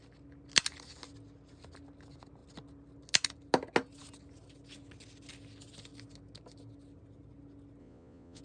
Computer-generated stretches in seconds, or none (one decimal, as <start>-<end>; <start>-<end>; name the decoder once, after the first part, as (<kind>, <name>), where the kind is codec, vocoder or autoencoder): 7.8-8.4 (vocoder, Vocos)